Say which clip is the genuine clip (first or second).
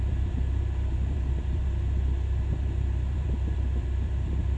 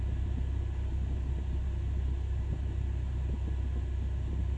second